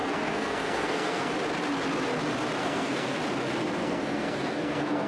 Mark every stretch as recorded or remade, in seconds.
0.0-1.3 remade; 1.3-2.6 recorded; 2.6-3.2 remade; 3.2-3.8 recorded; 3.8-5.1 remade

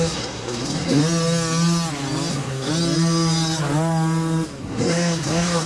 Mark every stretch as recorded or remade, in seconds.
0.0-1.0 remade; 1.0-2.3 recorded; 2.3-2.7 remade; 2.7-4.6 recorded; 4.6-5.7 remade

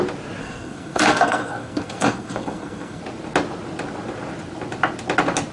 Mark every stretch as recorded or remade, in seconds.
0.0-0.4 recorded; 0.4-3.0 remade; 3.0-5.5 recorded